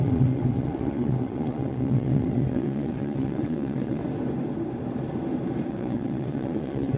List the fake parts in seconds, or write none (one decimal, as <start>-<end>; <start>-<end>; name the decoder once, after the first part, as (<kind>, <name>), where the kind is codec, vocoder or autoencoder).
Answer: 0.0-4.0 (vocoder, WaveNeXt); 5.7-7.0

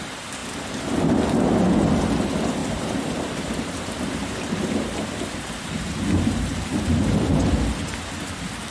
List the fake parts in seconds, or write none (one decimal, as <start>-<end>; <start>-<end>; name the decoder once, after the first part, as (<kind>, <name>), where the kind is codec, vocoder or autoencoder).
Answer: 2.6-7.3 (vocoder, BigVGAN v2)

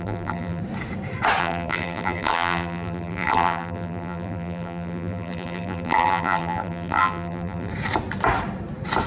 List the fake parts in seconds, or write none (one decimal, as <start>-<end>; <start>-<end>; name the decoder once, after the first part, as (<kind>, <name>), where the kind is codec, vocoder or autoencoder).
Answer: 0.0-0.6 (vocoder, BigVGAN v2); 1.4-7.7

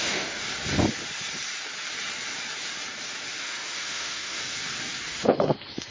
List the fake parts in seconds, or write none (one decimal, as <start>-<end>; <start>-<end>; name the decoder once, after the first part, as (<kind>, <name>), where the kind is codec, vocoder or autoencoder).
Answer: 0.0-0.4 (autoencoder, DAC-VAE); 3.4-4.4; 5.1-5.9

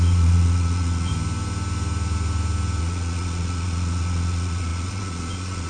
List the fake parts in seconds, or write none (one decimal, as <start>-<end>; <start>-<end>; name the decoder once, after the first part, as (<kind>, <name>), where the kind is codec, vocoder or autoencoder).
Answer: 0.0-1.1 (vocoder, Vocos); 2.8-5.7

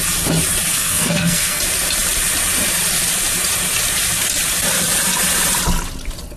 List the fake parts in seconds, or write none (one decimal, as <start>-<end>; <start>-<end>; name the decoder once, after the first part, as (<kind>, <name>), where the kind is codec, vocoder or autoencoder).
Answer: 0.7-1.6 (codec, SNAC)

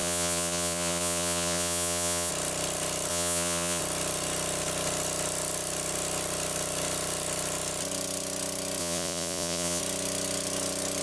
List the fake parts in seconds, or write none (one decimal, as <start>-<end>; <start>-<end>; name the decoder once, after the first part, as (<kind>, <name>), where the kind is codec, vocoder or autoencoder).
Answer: 0.0-2.3 (vocoder, Vocos); 3.1-3.8; 8.8-9.8

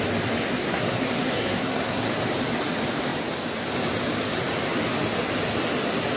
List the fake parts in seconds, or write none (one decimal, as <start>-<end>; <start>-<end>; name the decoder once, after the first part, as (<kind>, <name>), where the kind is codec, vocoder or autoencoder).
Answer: 0.4-2.0 (codec, SNAC)